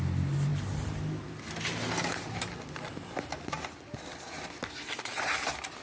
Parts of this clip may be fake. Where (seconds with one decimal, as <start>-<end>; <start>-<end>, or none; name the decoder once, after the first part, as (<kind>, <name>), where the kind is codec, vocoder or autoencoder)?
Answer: none